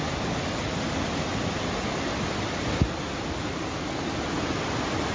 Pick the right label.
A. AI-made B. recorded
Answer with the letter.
B